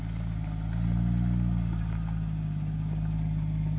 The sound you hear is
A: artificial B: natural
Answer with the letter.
B